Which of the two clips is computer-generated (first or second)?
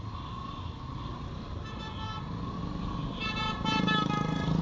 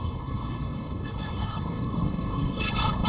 second